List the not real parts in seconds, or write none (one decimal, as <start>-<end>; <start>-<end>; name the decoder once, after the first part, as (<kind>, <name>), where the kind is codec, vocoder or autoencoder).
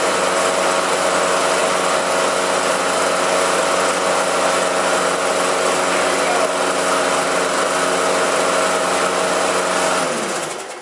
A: none